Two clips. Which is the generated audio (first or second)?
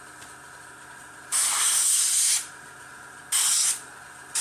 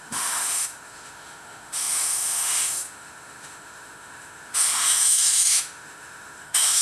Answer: second